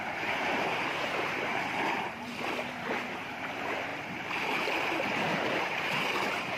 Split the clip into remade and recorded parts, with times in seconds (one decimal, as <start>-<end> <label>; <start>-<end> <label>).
0.0-1.5 remade; 1.5-2.9 recorded; 2.9-6.6 remade